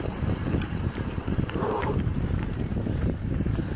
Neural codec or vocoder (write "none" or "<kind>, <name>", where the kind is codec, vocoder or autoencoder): vocoder, BigVGAN v2